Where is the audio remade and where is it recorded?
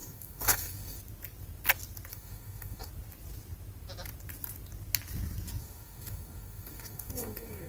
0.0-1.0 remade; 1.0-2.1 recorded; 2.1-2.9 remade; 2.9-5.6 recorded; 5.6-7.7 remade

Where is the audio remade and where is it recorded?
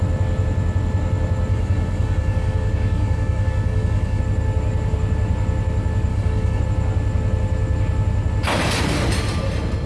0.0-1.5 recorded; 1.5-4.2 remade; 4.2-6.1 recorded; 6.1-6.6 remade; 6.6-9.9 recorded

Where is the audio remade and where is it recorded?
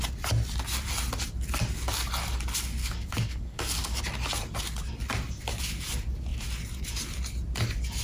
0.0-2.8 recorded; 2.8-4.0 remade; 4.0-8.0 recorded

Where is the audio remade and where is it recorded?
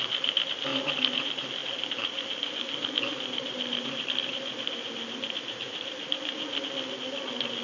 0.0-7.6 recorded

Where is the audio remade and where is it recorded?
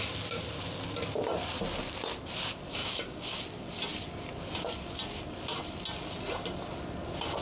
0.0-2.8 recorded; 2.8-3.4 remade; 3.4-7.4 recorded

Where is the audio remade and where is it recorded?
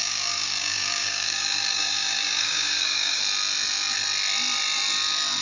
0.0-3.2 remade; 3.2-5.4 recorded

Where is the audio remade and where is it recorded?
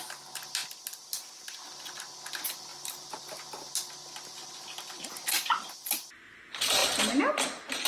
0.0-7.9 recorded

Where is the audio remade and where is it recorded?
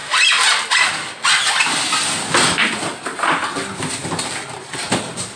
0.0-5.4 recorded